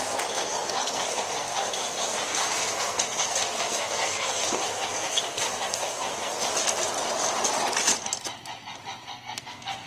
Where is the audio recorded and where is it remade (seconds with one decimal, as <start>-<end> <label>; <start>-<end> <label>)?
0.0-6.5 remade; 6.5-9.1 recorded; 9.1-9.9 remade